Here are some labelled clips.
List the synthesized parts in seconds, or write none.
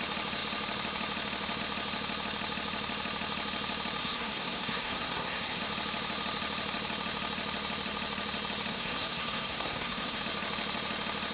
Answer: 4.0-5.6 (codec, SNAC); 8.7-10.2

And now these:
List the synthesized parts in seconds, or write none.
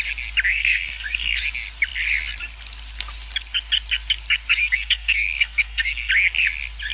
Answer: 0.5-1.4 (codec, SNAC); 4.6-6.1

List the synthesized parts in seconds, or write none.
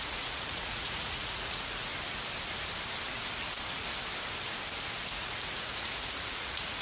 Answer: 0.0-1.9 (vocoder, Vocos); 5.1-6.8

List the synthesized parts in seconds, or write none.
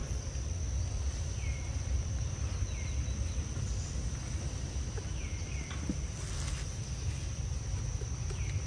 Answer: none